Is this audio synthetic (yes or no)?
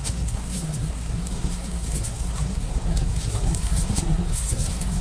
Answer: yes